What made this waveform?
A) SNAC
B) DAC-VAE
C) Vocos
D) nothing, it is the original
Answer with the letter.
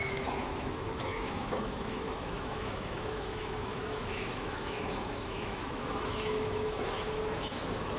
B